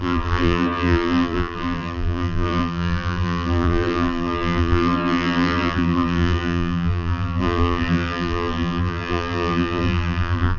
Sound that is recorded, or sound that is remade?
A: remade